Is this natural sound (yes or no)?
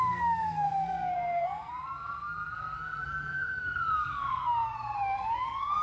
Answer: no